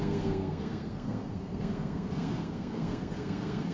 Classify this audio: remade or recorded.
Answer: remade